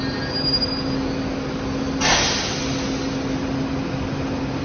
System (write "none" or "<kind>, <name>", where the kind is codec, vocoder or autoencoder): none